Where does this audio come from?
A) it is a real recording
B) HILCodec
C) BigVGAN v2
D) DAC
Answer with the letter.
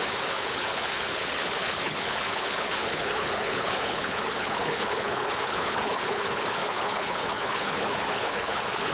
B